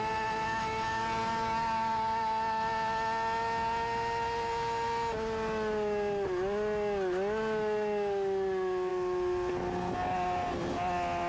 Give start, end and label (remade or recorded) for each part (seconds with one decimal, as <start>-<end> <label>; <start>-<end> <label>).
0.0-11.3 recorded